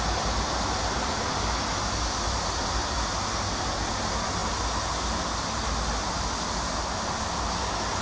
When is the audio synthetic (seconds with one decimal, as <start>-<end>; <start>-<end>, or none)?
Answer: 2.8-3.3